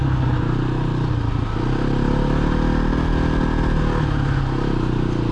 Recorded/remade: recorded